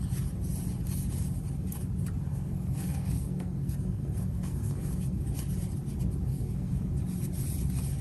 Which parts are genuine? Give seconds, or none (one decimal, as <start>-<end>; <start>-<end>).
0.0-2.3; 5.2-6.3; 6.9-8.0